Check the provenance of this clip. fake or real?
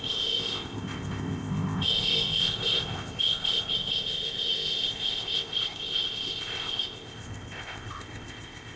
fake